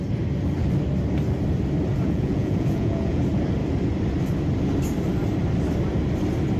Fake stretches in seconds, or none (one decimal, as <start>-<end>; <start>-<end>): 1.9-3.2